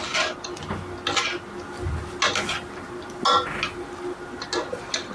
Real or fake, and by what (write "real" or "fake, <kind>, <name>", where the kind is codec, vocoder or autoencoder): real